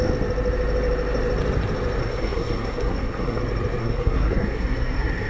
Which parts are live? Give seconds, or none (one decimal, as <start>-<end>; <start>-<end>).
0.0-2.0; 3.4-3.8